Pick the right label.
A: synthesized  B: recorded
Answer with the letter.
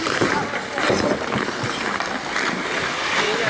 A